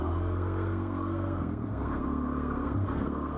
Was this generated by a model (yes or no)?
yes